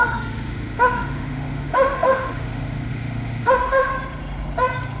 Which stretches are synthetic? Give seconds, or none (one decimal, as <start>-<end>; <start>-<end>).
0.0-3.9